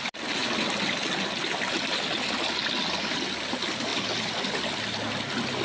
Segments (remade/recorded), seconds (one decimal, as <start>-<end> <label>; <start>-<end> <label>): 0.0-5.6 recorded